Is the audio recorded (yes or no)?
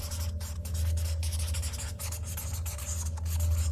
yes